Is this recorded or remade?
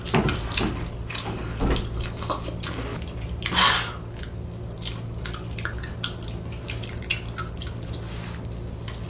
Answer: recorded